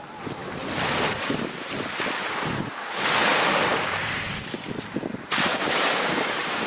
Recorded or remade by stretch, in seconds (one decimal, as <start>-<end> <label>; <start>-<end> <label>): 0.0-3.7 recorded; 3.7-4.3 remade; 4.3-5.5 recorded; 5.5-6.7 remade